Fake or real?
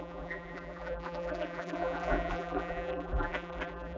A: fake